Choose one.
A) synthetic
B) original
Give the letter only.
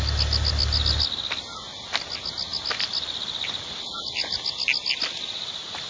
B